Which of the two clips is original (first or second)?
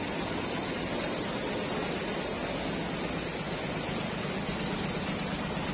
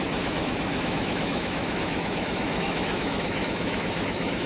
first